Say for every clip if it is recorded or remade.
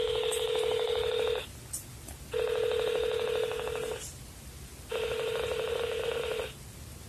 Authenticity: recorded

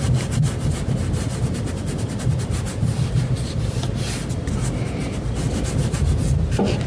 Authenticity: recorded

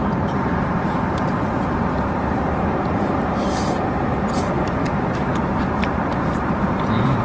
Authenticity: remade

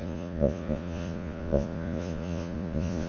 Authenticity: remade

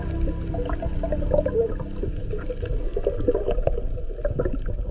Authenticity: recorded